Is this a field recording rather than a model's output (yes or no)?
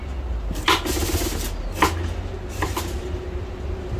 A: yes